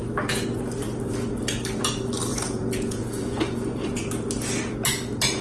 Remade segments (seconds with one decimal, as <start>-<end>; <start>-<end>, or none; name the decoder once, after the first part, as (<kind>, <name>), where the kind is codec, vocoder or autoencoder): 2.3-4.1 (vocoder, Vocos)